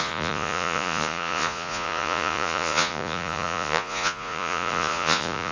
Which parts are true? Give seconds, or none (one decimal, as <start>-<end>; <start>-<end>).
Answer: none